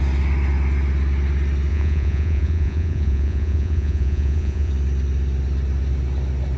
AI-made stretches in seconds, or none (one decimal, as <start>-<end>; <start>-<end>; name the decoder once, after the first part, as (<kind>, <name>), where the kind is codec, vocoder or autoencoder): 1.7-4.7 (vocoder, Vocos)